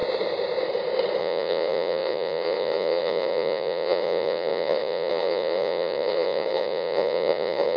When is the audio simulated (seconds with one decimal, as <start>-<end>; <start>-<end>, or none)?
1.2-7.8